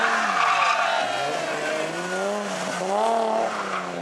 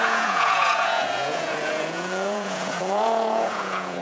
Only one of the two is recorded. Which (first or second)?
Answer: first